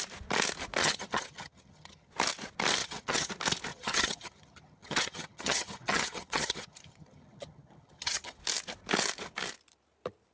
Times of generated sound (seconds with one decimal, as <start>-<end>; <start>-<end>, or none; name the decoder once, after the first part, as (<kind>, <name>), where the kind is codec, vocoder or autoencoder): 0.8-2.1 (vocoder, HiFi-GAN); 2.8-3.3; 3.7-8.4